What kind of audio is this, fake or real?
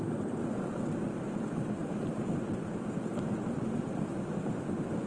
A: real